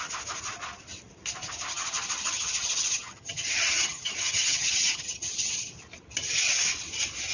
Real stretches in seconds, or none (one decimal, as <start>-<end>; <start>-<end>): 0.0-1.7; 5.7-7.3